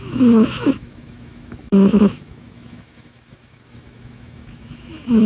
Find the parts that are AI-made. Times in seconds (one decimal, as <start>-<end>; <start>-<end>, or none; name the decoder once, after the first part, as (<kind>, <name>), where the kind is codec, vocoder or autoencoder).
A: 0.0-5.3 (autoencoder, DAC-VAE)